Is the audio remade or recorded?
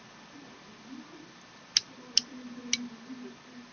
recorded